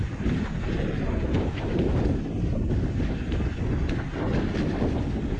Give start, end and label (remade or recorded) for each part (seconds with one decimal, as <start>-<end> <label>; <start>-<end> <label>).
0.0-3.2 remade; 3.2-5.4 recorded